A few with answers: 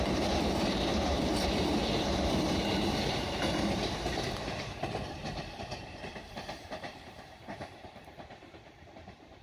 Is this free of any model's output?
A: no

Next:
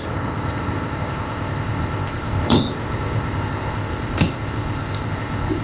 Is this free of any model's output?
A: no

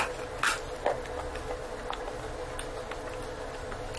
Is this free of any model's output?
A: yes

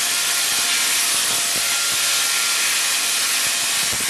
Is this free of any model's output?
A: yes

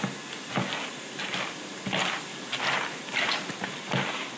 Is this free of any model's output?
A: yes